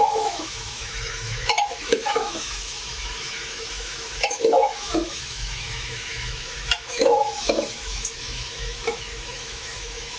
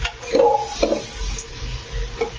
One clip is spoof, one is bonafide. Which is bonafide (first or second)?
second